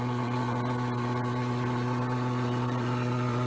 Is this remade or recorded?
recorded